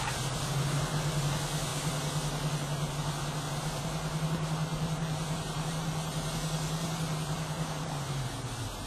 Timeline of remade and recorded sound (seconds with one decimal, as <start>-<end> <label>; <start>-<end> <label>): 0.0-4.7 recorded; 4.7-7.8 remade; 7.8-8.9 recorded